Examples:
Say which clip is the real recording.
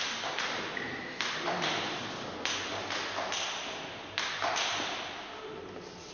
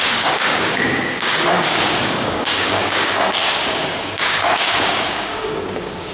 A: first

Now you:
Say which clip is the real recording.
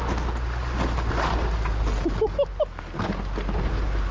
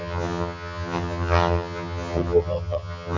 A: first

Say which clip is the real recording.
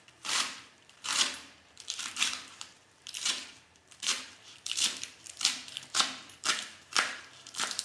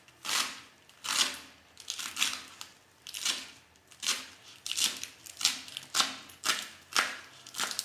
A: second